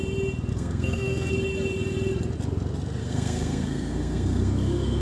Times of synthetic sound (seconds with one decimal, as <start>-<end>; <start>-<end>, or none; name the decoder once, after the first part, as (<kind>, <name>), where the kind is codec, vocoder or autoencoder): 0.5-1.3 (codec, SNAC); 3.0-5.0